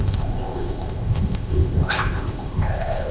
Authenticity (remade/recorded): remade